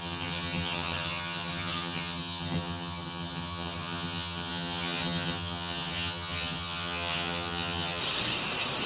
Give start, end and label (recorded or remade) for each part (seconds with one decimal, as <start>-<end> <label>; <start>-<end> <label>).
0.0-8.0 remade; 8.0-8.9 recorded